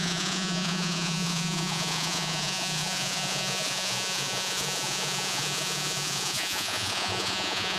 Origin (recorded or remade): remade